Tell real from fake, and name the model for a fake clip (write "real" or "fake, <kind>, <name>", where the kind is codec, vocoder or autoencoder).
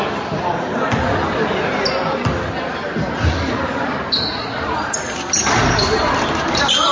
real